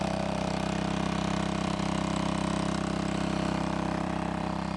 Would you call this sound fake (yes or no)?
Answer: yes